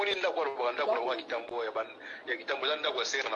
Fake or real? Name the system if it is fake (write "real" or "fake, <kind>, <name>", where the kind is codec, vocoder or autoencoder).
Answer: real